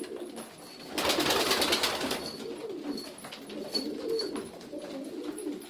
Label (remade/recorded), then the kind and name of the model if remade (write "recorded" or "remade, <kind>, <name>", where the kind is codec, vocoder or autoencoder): recorded